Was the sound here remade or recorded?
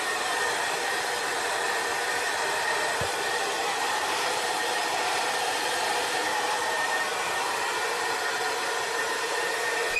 remade